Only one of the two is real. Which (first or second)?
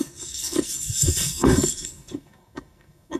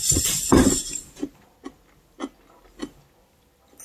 second